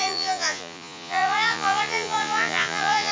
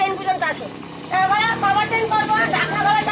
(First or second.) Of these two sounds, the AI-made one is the first